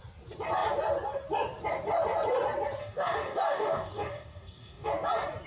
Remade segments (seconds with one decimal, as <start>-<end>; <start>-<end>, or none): 2.8-4.9